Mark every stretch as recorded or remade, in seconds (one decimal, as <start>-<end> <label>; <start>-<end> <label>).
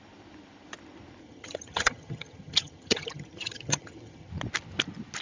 0.0-1.2 recorded; 1.2-4.3 remade; 4.3-5.2 recorded